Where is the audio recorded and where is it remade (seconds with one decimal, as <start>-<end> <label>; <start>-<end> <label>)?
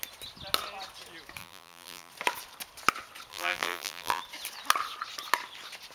0.0-1.4 recorded; 1.4-2.1 remade; 2.1-3.3 recorded; 3.3-4.2 remade; 4.2-5.9 recorded